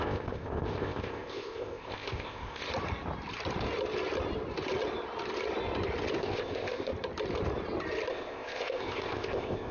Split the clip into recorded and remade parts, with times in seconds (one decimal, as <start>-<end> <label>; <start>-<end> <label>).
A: 0.0-2.7 remade; 2.7-6.2 recorded; 6.2-6.9 remade; 6.9-8.1 recorded; 8.1-9.7 remade